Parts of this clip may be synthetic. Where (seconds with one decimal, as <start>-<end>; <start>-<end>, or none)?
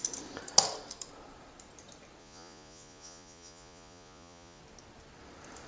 2.2-4.6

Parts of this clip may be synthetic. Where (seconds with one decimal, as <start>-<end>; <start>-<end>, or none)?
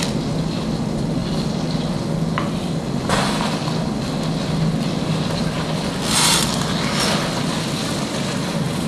none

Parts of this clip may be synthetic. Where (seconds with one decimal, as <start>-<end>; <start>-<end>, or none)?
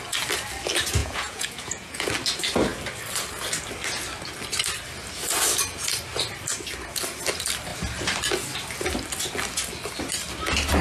1.0-2.1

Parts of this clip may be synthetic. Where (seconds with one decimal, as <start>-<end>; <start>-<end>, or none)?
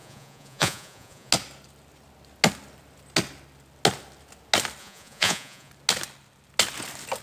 0.0-1.3; 4.8-5.7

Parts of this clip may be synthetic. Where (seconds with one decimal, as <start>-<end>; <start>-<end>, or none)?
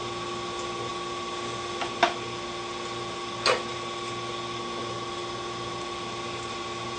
none